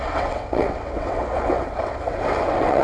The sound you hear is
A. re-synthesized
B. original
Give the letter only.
A